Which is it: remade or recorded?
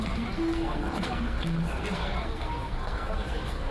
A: remade